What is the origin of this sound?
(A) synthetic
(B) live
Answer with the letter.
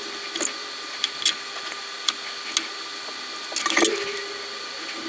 B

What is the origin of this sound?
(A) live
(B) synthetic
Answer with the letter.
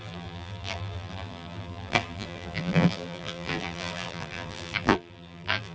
B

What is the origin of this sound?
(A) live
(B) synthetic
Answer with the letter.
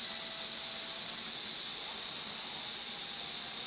A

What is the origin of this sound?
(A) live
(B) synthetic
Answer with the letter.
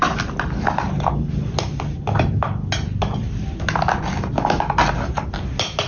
A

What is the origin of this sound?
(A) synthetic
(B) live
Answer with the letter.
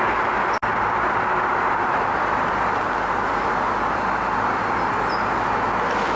B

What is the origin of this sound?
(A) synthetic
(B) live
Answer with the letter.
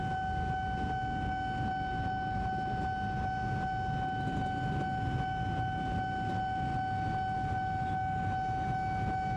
B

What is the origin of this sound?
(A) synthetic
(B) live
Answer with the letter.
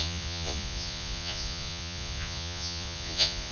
A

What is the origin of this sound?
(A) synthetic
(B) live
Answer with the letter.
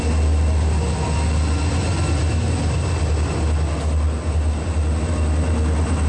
B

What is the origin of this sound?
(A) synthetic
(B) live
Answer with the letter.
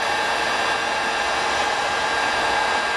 B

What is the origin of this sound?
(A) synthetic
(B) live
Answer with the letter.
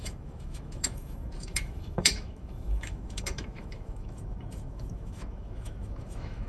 A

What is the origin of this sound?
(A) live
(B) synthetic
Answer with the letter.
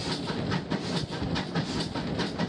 A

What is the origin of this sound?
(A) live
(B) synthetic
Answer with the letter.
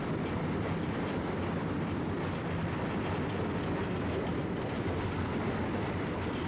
A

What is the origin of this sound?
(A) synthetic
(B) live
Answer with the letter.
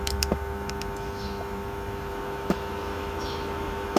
A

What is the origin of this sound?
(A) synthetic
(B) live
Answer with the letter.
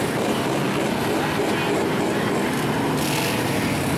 B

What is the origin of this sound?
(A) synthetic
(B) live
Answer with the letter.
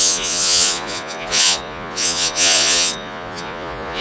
A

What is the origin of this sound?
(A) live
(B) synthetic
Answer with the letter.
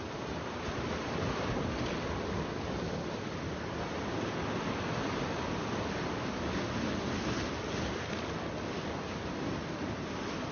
A